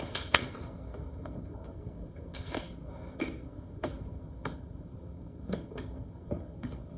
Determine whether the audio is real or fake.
fake